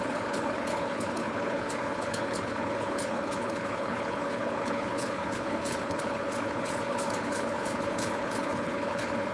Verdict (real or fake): fake